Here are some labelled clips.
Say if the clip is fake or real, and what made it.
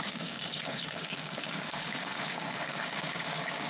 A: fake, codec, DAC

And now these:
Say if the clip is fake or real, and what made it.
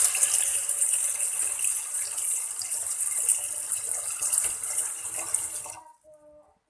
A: real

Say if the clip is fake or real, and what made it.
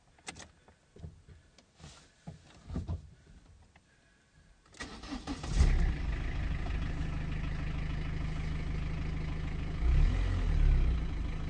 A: real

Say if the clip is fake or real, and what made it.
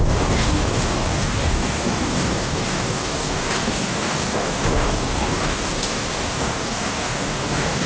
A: fake, codec, DAC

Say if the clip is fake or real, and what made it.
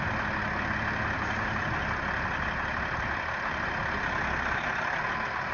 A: real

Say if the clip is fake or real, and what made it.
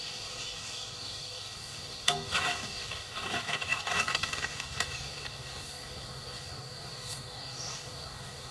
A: fake, codec, DAC